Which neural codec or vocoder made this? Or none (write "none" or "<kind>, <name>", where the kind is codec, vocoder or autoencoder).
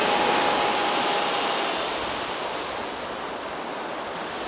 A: none